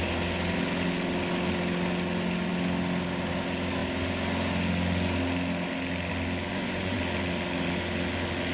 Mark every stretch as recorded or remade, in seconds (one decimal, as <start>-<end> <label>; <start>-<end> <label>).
0.0-6.5 recorded; 6.5-7.0 remade; 7.0-8.5 recorded

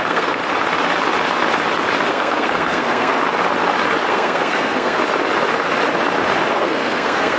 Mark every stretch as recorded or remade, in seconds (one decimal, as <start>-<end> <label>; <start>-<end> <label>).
0.0-0.4 remade; 0.4-2.1 recorded; 2.1-3.2 remade; 3.2-4.1 recorded; 4.1-5.0 remade; 5.0-6.5 recorded; 6.5-7.4 remade